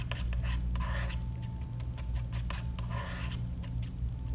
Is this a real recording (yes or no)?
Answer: yes